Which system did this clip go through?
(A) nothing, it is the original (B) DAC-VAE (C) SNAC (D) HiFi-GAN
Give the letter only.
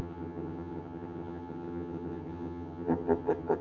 D